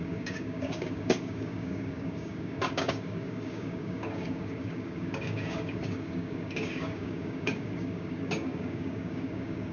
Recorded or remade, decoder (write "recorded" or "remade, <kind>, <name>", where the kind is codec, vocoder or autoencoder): remade, codec, DAC